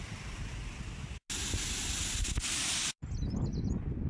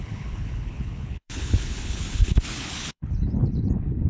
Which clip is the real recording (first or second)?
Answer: first